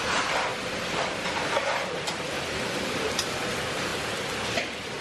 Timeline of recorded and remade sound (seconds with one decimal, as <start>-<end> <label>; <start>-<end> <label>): 0.0-0.5 recorded; 0.5-3.5 remade; 3.5-5.0 recorded

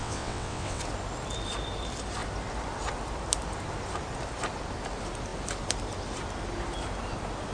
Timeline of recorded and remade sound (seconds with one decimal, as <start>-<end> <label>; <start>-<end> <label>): 0.0-0.8 remade; 0.8-7.5 recorded

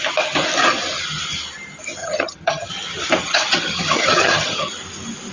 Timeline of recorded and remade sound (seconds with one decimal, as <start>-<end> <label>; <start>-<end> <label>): 0.0-2.0 recorded; 2.0-2.7 remade; 2.7-3.2 recorded; 3.2-4.7 remade; 4.7-5.3 recorded

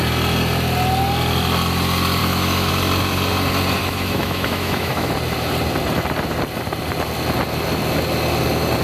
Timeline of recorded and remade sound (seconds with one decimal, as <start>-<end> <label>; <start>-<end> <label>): 0.0-2.2 recorded; 2.2-2.7 remade; 2.7-3.8 recorded; 3.8-5.1 remade; 5.1-8.8 recorded

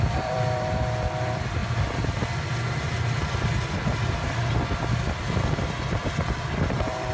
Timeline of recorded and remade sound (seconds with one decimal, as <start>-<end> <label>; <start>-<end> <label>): 0.0-1.6 remade; 1.6-5.8 recorded; 5.8-7.1 remade

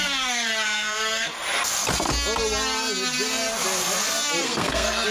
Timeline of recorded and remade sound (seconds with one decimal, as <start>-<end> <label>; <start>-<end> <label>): 0.0-1.3 remade; 1.3-4.4 recorded; 4.4-5.1 remade